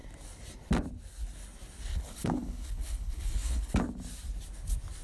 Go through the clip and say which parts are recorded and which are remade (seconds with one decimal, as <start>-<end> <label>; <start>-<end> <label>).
0.0-1.9 recorded; 1.9-3.7 remade; 3.7-5.0 recorded